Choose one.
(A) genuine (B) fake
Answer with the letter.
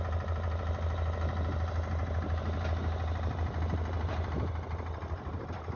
A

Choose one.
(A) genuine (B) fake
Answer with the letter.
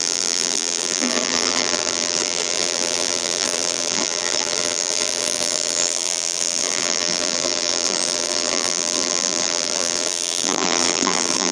B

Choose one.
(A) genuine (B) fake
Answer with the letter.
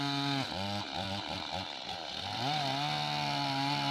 A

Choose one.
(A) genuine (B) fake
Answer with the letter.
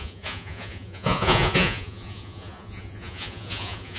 B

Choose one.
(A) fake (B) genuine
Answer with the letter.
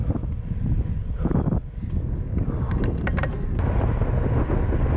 B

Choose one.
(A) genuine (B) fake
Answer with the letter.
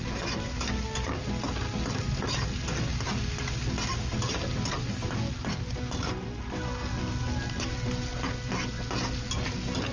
A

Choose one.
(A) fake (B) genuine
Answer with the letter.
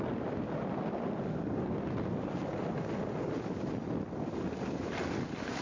B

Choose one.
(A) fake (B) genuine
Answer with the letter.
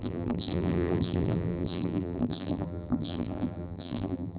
A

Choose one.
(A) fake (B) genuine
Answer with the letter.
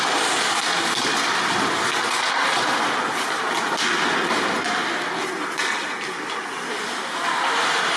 B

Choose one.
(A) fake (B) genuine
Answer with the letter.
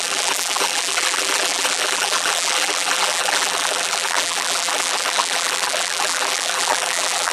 A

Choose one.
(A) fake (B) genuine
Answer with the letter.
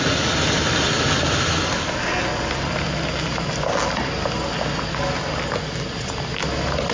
B